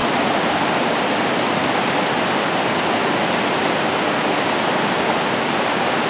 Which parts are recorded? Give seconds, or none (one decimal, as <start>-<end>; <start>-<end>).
0.0-6.1

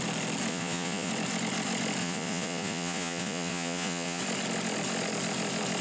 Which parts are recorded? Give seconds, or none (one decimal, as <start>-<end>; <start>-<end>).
0.0-0.5; 1.1-2.0; 4.2-5.8